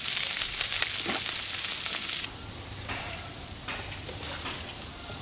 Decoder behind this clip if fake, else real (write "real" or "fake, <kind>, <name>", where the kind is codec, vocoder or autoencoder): real